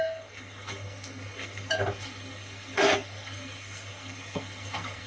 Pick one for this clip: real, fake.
fake